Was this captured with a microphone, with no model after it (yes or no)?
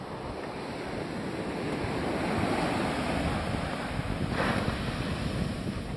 yes